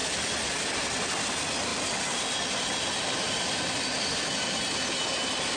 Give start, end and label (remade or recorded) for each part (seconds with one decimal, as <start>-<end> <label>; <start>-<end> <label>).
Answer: 0.0-5.6 recorded